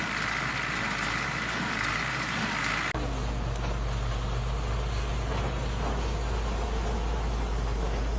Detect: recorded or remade recorded